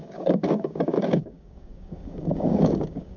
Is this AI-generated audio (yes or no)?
yes